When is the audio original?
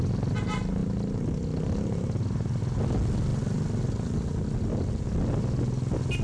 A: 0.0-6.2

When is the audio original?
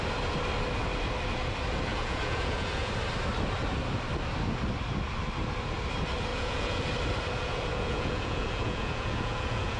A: 0.0-1.9; 2.9-6.3; 6.9-7.5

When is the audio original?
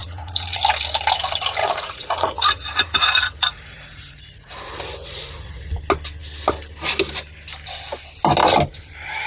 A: 0.6-1.6; 5.8-9.3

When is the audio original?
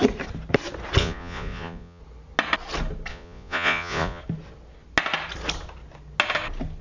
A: 0.0-1.0; 2.0-3.1; 4.2-6.8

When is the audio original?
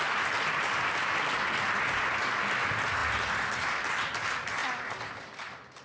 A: 0.0-5.8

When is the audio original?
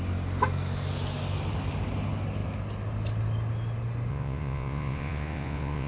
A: 0.0-4.1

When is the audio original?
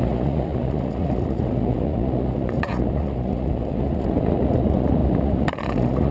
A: none